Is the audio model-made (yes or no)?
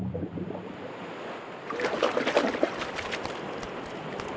no